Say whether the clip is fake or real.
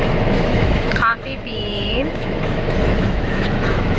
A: fake